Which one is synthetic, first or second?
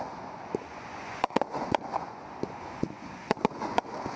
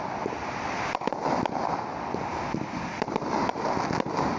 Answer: first